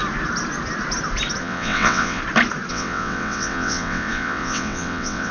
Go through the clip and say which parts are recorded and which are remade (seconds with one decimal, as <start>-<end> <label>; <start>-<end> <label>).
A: 0.0-1.4 recorded; 1.4-2.2 remade; 2.2-2.7 recorded; 2.7-5.3 remade